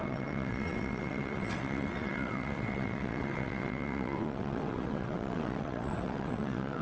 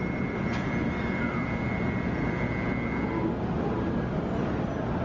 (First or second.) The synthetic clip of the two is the first